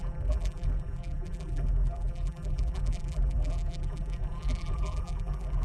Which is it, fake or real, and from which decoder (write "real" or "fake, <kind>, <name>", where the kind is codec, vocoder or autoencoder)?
fake, vocoder, BigVGAN v2